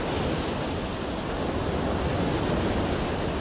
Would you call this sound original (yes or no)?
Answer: yes